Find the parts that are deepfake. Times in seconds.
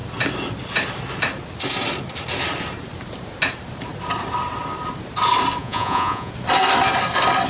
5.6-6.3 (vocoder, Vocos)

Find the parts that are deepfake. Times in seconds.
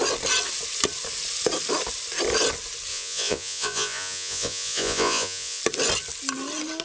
2.9-5.6 (vocoder, Vocos)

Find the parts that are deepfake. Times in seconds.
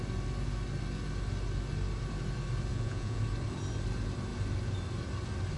2.7-3.2 (vocoder, Vocos)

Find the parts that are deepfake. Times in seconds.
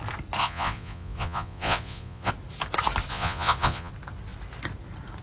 0.4-2.3 (vocoder, Vocos); 3.1-3.9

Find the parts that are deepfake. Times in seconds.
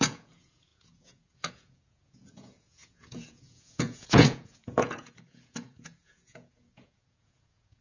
0.0-7.8 (vocoder, Vocos)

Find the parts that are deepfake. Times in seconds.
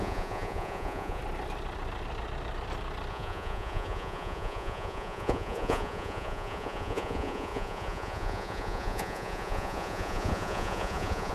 0.0-1.2 (vocoder, Vocos); 3.1-11.3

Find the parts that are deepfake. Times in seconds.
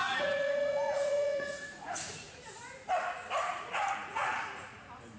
0.0-2.4 (vocoder, Vocos); 3.4-4.8